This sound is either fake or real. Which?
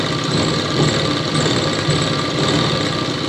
real